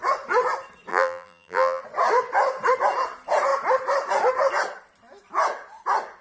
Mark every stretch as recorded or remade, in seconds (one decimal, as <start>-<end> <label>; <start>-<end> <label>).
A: 0.0-0.9 recorded; 0.9-1.8 remade; 1.8-6.2 recorded